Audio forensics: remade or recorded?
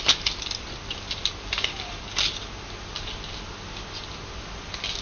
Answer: recorded